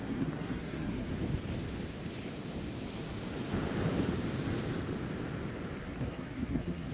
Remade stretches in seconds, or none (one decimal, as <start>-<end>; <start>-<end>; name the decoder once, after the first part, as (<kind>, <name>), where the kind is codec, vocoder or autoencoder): 0.0-1.1 (codec, SNAC); 5.8-6.9